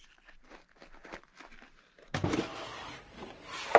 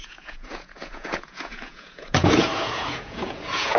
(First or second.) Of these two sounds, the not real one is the second